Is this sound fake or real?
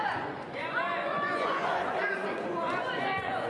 fake